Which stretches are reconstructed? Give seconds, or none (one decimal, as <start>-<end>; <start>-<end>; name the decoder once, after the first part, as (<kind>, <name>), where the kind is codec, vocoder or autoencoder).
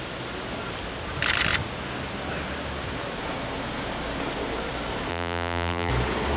5.1-5.9 (vocoder, BigVGAN v2)